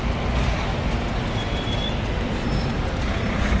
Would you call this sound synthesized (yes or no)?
no